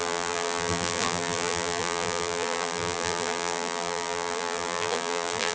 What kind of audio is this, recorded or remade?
remade